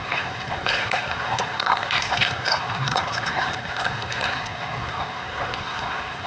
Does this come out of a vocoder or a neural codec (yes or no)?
yes